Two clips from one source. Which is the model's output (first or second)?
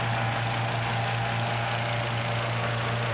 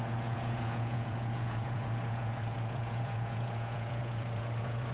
second